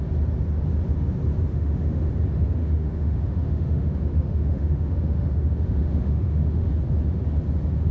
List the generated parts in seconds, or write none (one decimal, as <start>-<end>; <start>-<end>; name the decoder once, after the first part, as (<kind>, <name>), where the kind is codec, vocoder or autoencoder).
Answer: 1.5-2.1 (autoencoder, DAC-VAE); 2.6-6.7